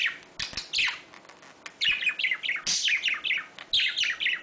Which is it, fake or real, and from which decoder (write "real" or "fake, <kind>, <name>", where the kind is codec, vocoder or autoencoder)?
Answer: real